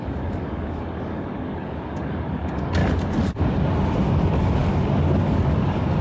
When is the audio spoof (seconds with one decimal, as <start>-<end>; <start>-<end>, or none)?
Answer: 0.0-2.8; 4.1-6.0